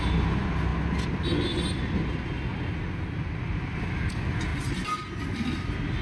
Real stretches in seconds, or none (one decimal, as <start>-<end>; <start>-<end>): 0.0-6.0